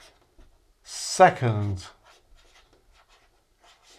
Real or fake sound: real